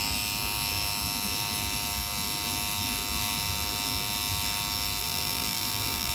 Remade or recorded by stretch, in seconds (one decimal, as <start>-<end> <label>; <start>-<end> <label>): 0.0-5.0 recorded; 5.0-6.1 remade